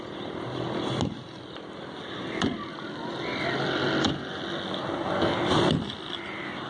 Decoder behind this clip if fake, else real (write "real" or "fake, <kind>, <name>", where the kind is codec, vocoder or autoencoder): real